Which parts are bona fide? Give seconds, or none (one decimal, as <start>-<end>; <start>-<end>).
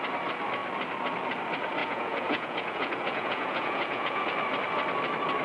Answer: 0.0-1.8; 4.2-5.4